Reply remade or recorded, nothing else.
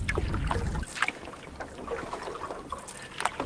recorded